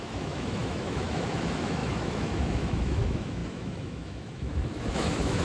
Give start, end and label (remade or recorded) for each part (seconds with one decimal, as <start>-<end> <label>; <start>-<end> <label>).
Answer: 0.0-5.4 remade